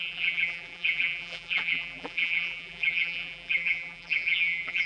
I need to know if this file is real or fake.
fake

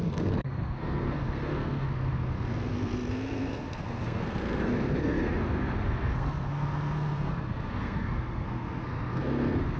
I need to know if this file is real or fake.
fake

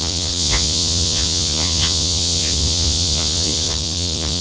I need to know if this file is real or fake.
fake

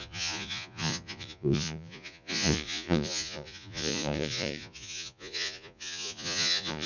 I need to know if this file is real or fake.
fake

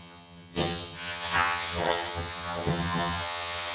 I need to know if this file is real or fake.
fake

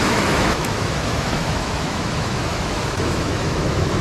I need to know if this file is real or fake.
fake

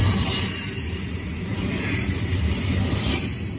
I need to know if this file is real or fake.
real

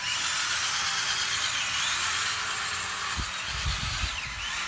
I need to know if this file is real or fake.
real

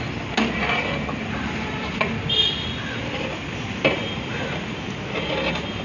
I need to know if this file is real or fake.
real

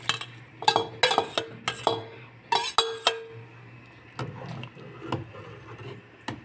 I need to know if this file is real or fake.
real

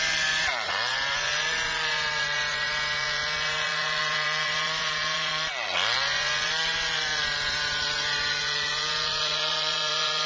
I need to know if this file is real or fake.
fake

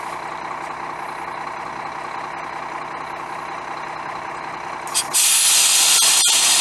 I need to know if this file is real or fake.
real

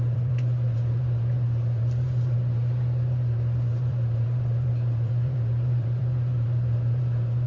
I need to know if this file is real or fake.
fake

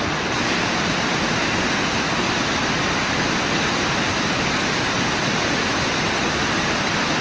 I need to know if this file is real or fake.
real